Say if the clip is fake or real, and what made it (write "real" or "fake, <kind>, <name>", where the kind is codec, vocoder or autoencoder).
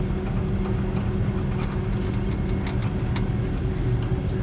real